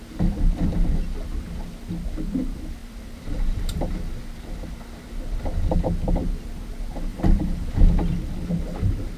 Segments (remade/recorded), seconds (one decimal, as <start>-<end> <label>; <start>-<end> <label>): 0.0-2.8 recorded; 2.8-5.1 remade; 5.1-7.1 recorded; 7.1-7.8 remade; 7.8-9.2 recorded